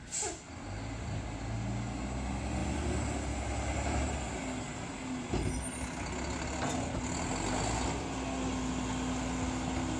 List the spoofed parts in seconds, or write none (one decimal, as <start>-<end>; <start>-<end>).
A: none